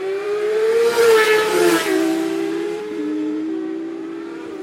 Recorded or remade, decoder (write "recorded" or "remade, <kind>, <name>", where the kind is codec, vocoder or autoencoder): remade, vocoder, BigVGAN v2